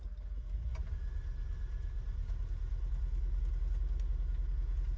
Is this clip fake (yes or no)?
no